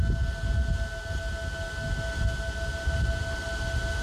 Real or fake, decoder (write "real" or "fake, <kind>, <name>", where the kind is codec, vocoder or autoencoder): real